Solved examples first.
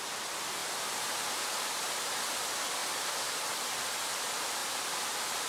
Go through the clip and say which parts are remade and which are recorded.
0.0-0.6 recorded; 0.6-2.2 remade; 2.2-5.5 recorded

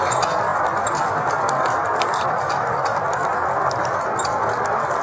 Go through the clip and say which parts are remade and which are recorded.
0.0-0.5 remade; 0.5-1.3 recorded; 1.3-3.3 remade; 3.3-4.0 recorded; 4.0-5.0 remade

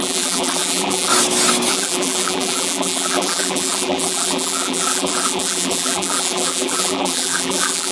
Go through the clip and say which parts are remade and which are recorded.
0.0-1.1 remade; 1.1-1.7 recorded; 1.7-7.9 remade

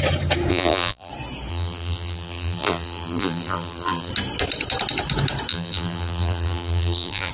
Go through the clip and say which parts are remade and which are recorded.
0.0-0.5 recorded; 0.5-1.1 remade; 1.1-1.5 recorded; 1.5-4.1 remade; 4.1-5.5 recorded; 5.5-7.3 remade

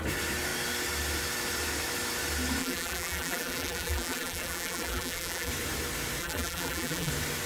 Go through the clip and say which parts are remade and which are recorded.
0.0-2.6 recorded; 2.6-5.5 remade; 5.5-6.2 recorded; 6.2-7.1 remade; 7.1-7.5 recorded